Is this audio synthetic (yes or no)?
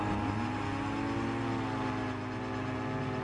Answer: no